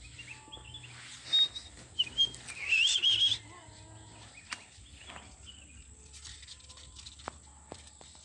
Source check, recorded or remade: recorded